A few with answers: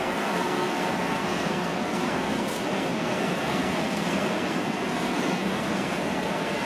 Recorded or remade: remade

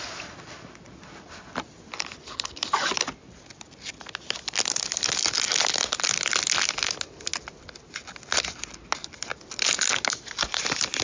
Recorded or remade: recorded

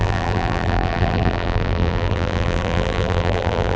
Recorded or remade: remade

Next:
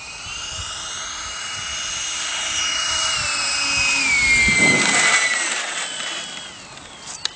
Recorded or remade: recorded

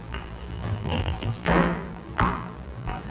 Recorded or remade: remade